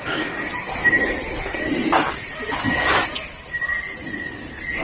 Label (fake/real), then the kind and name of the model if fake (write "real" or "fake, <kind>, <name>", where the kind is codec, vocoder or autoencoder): real